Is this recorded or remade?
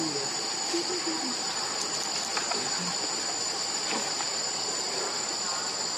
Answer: remade